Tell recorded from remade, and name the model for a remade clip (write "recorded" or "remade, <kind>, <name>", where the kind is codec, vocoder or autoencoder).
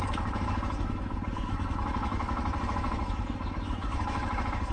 remade, autoencoder, DAC-VAE